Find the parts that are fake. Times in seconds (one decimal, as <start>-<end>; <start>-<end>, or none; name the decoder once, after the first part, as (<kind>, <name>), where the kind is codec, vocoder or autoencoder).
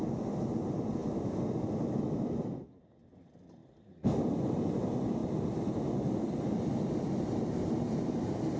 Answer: none